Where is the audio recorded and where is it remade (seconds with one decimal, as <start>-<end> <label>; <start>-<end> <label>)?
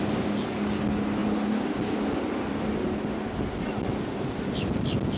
0.0-5.2 recorded